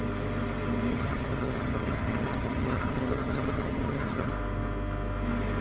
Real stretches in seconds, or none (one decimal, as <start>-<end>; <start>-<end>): 0.0-0.9; 4.3-5.6